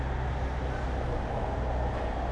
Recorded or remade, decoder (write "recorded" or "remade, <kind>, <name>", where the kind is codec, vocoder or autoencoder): recorded